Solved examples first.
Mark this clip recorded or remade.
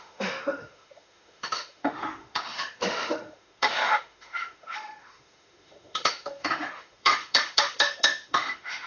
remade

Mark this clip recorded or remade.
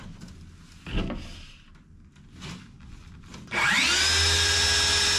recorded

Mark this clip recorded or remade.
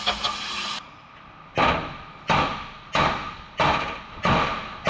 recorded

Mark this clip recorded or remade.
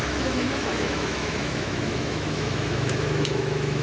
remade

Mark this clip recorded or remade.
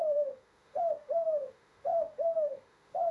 remade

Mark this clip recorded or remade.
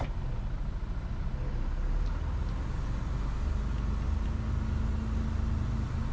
recorded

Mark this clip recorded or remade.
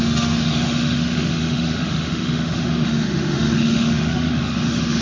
remade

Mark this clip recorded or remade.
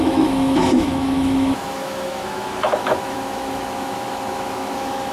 remade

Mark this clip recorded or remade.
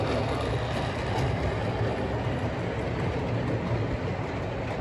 recorded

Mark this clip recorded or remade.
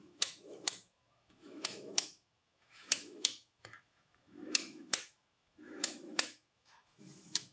remade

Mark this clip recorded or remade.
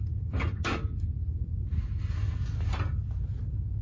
recorded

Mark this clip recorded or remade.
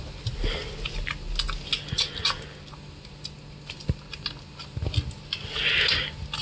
recorded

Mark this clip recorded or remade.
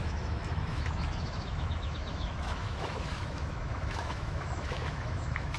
remade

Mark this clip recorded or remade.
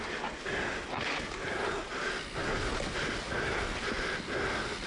recorded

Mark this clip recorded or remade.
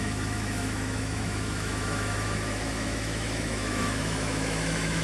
remade